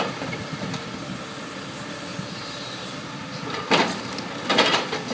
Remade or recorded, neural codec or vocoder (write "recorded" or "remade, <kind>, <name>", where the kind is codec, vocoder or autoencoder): remade, vocoder, BigVGAN v2